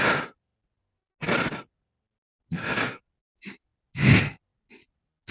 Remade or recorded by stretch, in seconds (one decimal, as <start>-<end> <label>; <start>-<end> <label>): 0.0-2.6 recorded; 2.6-3.1 remade; 3.1-5.3 recorded